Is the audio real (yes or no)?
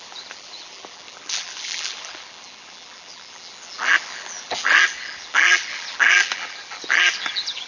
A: no